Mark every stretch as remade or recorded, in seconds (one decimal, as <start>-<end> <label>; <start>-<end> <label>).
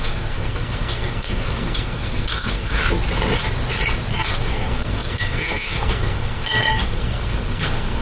0.0-2.8 remade; 2.8-4.1 recorded; 4.1-8.0 remade